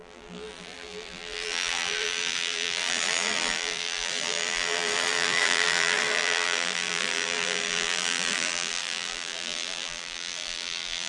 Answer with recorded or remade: remade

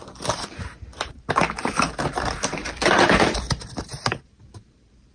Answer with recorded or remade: remade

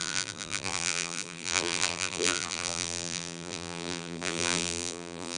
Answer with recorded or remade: remade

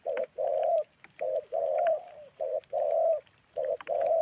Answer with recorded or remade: remade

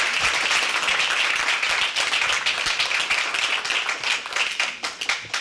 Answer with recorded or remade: recorded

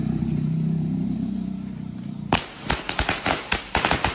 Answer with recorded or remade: remade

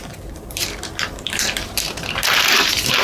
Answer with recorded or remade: remade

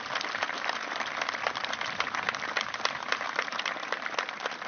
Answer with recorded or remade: remade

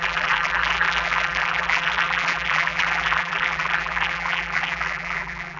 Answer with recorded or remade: remade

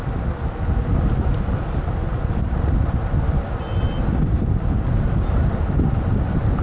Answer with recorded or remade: recorded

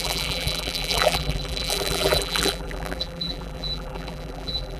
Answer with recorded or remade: remade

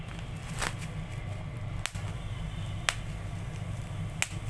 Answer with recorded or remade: recorded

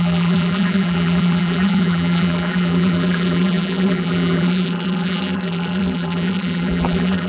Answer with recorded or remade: remade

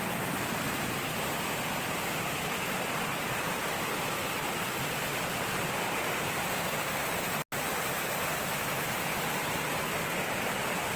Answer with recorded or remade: recorded